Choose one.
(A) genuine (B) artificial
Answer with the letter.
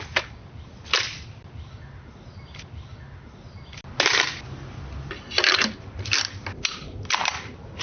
A